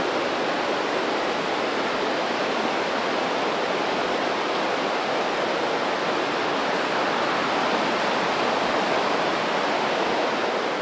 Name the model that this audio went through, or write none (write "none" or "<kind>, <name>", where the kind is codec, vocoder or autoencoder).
none